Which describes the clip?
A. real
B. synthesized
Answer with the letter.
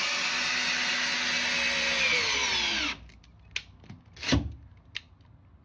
A